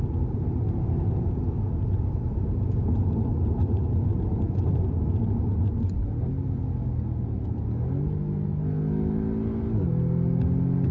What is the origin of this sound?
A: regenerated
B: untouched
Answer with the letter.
B